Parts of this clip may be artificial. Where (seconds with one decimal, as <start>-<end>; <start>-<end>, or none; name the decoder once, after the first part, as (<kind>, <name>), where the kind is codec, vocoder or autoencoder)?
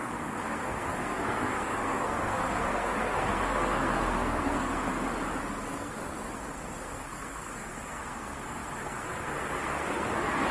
0.0-4.9 (codec, SNAC); 5.6-10.5